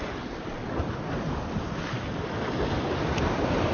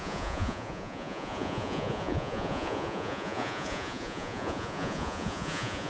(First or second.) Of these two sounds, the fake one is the second